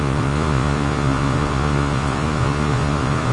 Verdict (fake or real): fake